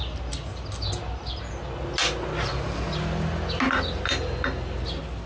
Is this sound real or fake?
real